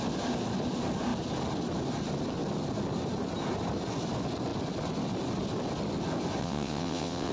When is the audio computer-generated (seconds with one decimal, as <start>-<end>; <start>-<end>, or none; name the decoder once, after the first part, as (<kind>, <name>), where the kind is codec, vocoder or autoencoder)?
6.4-7.3 (vocoder, WaveNeXt)